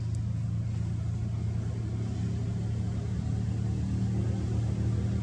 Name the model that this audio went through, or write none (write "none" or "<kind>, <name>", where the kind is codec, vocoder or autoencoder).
none